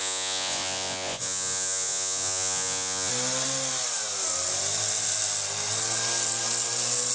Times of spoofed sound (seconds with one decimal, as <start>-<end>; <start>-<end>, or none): 0.0-3.1